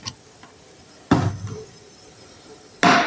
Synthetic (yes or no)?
no